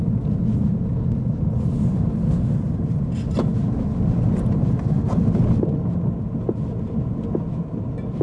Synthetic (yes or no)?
no